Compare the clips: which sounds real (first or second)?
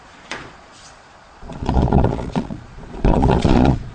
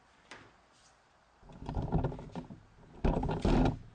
second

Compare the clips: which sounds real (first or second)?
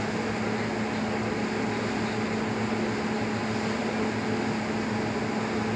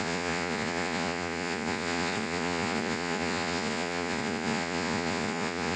first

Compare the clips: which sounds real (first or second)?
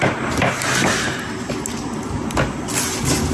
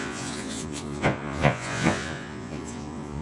first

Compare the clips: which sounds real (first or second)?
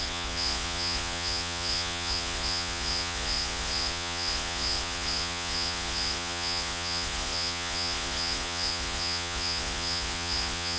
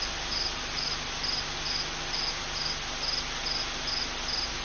second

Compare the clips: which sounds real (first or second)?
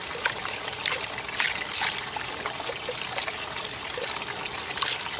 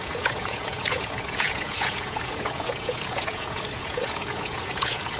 first